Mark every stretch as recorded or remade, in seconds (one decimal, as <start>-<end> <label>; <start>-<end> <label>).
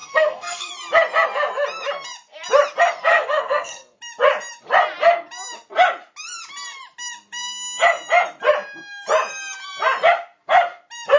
0.0-0.7 remade; 0.7-3.1 recorded; 3.1-4.0 remade; 4.0-11.2 recorded